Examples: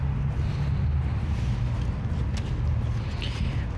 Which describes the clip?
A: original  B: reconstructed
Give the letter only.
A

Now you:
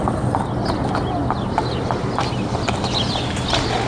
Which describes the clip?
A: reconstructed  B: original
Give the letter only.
B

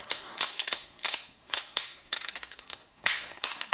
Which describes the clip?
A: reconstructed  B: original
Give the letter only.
A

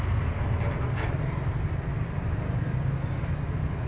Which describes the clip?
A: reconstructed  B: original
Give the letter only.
B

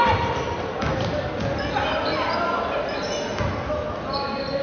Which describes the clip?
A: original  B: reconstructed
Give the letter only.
A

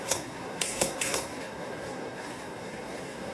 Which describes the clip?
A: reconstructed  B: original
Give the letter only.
A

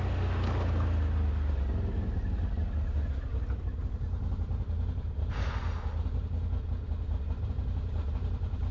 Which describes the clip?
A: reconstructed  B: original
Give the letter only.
B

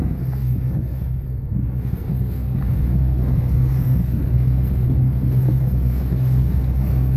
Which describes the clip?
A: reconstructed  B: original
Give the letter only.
A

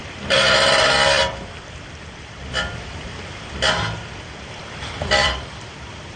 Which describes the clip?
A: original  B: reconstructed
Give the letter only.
B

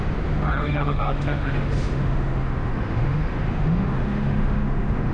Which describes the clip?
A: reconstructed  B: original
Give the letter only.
A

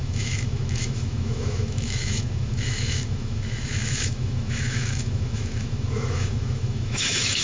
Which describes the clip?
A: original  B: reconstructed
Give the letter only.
B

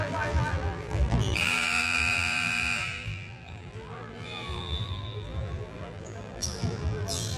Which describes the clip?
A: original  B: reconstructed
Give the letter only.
B